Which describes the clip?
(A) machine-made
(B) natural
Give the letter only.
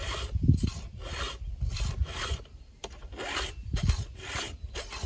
B